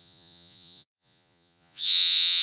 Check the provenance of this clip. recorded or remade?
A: remade